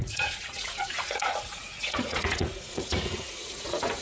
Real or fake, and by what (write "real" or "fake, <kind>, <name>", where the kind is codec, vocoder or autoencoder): fake, vocoder, Vocos